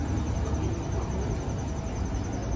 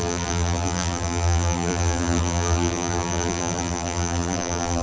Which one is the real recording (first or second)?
first